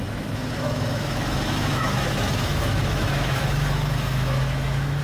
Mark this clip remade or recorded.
remade